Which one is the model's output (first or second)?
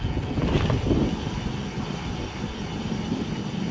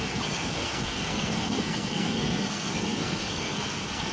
second